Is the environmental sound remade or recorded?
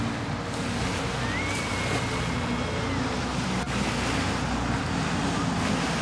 recorded